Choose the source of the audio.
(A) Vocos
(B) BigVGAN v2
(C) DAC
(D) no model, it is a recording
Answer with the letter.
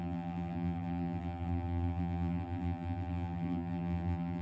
B